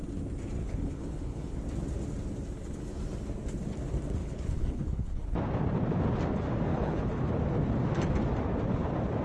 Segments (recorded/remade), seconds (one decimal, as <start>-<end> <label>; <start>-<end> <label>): 0.0-0.6 recorded; 0.6-1.6 remade; 1.6-4.2 recorded; 4.2-5.3 remade; 5.3-6.7 recorded; 6.7-7.3 remade; 7.3-9.2 recorded